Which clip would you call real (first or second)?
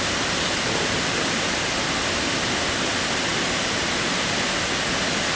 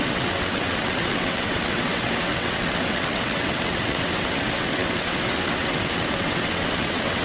first